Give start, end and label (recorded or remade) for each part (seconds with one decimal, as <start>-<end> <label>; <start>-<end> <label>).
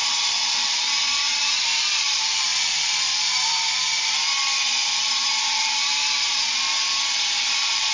0.0-4.4 remade; 4.4-5.0 recorded; 5.0-7.9 remade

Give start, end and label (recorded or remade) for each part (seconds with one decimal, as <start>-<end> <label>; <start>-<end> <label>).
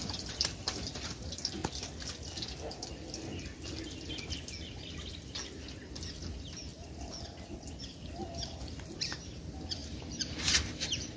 0.0-1.6 remade; 1.6-6.2 recorded; 6.2-6.7 remade; 6.7-7.8 recorded; 7.8-11.2 remade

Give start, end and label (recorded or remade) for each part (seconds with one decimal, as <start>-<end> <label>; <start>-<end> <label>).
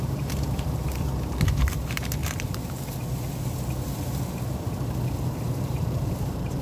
0.0-2.2 remade; 2.2-5.4 recorded; 5.4-6.6 remade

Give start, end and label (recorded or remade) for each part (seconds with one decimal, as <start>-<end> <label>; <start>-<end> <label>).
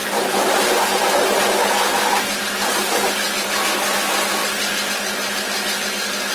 0.0-1.4 remade; 1.4-6.3 recorded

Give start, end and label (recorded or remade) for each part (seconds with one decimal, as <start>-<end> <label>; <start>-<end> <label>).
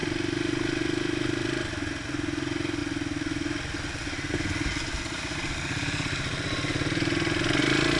0.0-8.0 recorded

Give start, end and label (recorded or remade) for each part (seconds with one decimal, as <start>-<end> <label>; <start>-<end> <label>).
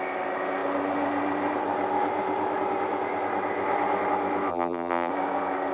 0.0-4.5 recorded; 4.5-5.1 remade; 5.1-5.7 recorded